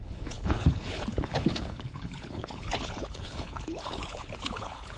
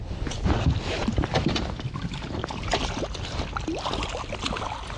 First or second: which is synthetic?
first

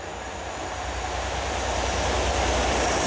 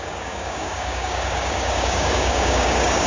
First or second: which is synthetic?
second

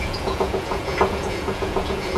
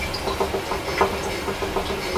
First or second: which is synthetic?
first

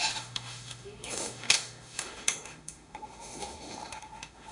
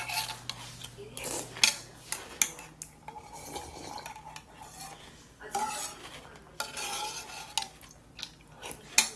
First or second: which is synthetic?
first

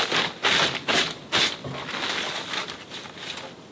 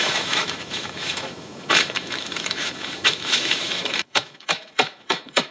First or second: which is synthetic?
second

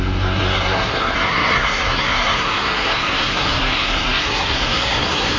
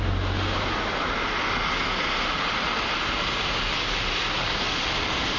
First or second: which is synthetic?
first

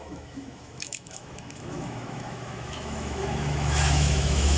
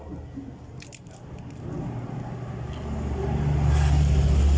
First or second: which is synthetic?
first